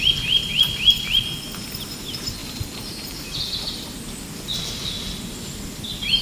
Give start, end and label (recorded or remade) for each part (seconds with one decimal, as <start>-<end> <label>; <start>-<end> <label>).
0.0-6.2 recorded